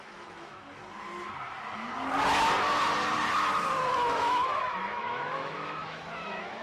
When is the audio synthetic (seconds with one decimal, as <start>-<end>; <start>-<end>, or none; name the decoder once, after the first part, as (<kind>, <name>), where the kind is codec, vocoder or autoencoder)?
0.0-0.8 (autoencoder, DAC-VAE); 3.9-6.6